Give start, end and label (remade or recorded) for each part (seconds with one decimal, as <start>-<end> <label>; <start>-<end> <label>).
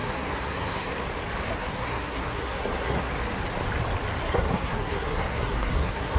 0.0-0.9 remade; 0.9-1.6 recorded; 1.6-3.1 remade; 3.1-4.2 recorded; 4.2-6.2 remade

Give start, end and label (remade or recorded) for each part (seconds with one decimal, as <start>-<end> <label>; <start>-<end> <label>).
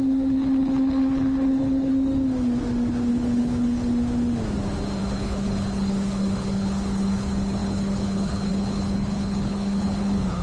0.0-1.9 remade; 1.9-3.1 recorded; 3.1-3.9 remade; 3.9-5.0 recorded; 5.0-10.4 remade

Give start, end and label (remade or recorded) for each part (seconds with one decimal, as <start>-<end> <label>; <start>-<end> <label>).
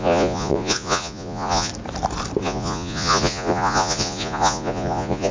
0.0-1.7 remade; 1.7-2.4 recorded; 2.4-5.3 remade